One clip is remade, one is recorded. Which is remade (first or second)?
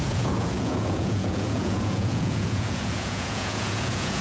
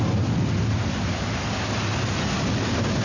first